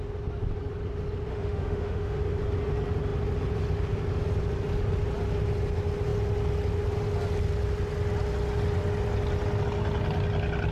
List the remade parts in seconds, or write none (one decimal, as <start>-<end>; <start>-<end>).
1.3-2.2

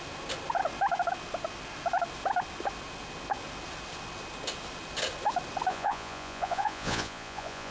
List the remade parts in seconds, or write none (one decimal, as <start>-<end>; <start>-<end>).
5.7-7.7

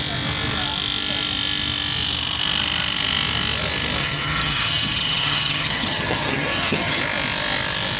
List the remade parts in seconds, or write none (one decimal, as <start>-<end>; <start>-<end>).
4.0-7.0

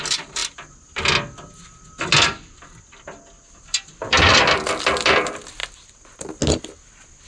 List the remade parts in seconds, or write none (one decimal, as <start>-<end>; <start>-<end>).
none

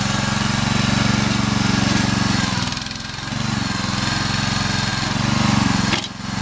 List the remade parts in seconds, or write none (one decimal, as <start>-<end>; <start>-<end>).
none